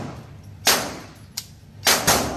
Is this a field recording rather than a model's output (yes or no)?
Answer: yes